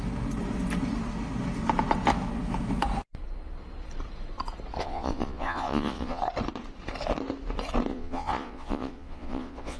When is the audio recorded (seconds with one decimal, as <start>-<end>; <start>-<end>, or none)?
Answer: 0.0-4.8; 6.2-7.9